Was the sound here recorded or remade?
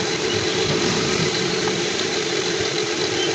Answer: remade